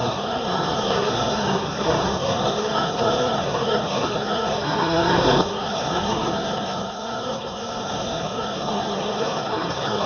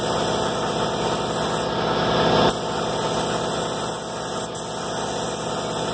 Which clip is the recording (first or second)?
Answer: second